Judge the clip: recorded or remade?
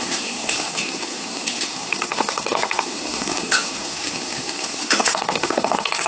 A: remade